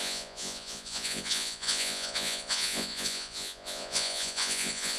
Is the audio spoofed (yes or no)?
yes